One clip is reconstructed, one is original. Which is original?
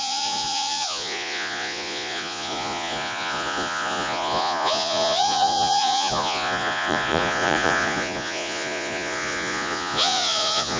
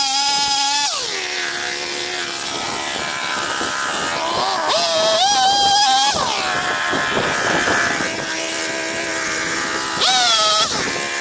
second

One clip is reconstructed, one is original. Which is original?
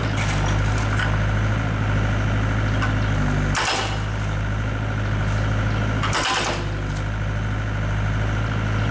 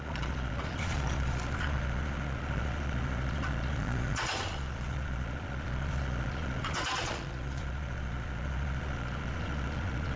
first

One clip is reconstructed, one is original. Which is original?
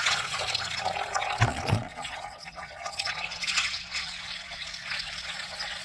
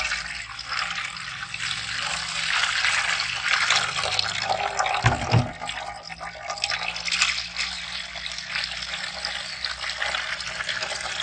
second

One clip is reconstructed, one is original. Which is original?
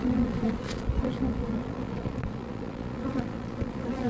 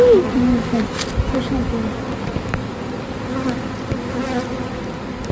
second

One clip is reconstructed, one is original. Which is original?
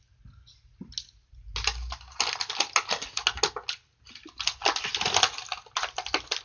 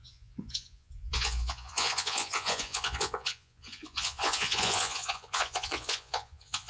first